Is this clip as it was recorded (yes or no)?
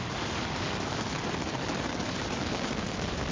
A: no